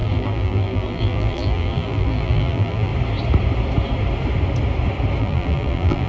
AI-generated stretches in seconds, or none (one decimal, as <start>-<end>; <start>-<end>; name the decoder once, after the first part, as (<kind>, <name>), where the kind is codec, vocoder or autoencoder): 0.0-2.9 (vocoder, BigVGAN v2); 5.2-6.1